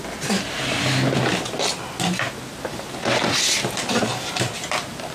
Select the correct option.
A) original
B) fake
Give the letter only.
A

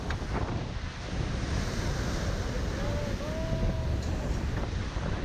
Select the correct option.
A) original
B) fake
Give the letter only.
A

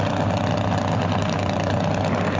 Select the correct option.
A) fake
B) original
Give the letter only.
B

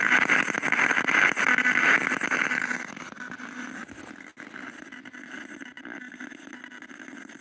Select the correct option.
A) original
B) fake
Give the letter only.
A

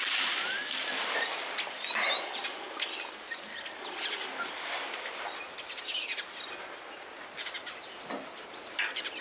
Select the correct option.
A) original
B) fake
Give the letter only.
A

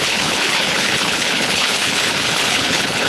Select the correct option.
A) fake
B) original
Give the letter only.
A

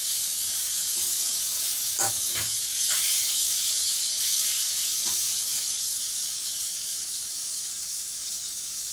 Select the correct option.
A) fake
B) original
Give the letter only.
A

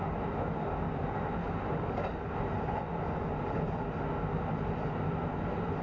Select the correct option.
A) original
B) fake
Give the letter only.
A